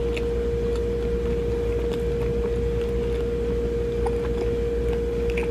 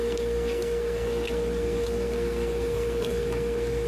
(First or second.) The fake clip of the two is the second